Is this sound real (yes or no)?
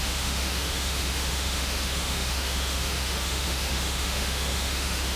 no